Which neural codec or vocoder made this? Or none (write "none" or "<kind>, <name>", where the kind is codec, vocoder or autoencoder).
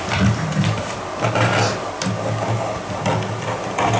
none